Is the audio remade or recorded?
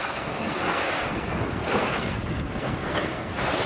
remade